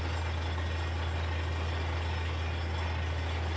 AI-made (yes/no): no